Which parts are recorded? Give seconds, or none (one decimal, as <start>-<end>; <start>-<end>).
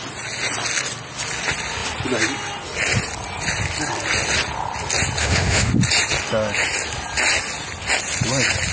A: 0.0-5.2; 5.7-8.7